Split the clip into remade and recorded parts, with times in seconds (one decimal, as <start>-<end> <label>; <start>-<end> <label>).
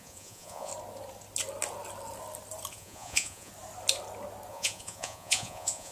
0.0-0.7 remade; 0.7-2.7 recorded; 2.7-3.5 remade; 3.5-4.5 recorded; 4.5-5.9 remade